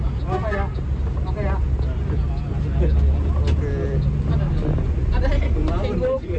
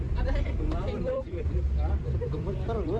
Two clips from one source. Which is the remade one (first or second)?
second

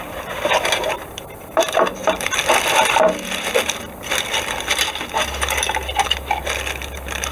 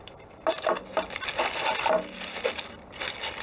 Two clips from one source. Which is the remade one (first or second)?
first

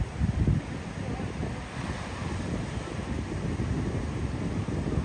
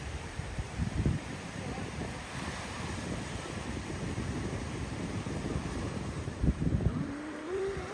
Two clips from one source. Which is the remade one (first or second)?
second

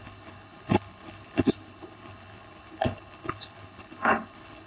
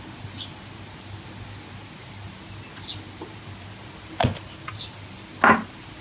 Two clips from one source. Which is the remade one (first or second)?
first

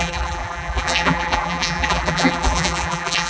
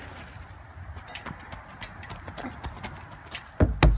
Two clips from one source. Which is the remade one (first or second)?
first